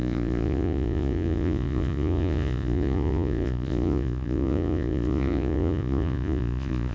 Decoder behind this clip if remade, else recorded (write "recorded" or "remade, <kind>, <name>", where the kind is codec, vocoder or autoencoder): remade, vocoder, Vocos